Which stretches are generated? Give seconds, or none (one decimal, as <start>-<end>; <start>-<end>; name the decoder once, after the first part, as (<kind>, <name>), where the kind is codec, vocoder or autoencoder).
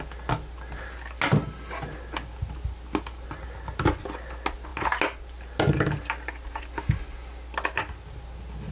none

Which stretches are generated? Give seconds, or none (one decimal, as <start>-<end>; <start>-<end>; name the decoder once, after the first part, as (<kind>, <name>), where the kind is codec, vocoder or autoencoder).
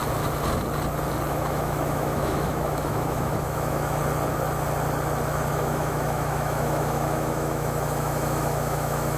1.3-4.0 (autoencoder, DAC-VAE); 5.5-9.2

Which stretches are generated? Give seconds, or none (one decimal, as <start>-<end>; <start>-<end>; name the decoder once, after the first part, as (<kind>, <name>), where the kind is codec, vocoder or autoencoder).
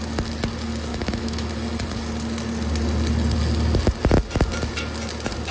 0.9-1.5 (autoencoder, DAC-VAE)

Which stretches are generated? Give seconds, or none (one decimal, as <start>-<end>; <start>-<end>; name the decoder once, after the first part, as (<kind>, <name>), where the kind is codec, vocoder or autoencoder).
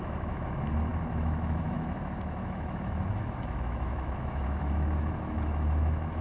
0.0-6.2 (autoencoder, DAC-VAE)